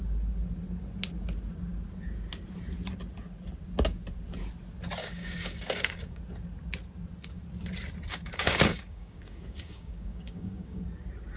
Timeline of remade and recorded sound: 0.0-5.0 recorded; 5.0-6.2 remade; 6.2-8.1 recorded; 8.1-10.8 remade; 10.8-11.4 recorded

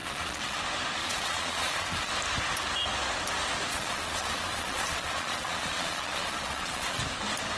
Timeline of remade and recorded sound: 0.0-0.6 remade; 0.6-1.0 recorded; 1.0-2.1 remade; 2.1-3.7 recorded; 3.7-7.0 remade; 7.0-7.6 recorded

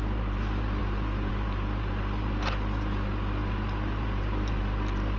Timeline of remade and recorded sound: 0.0-5.2 recorded